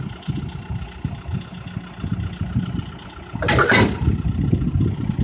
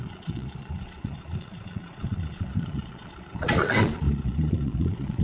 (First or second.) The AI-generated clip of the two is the second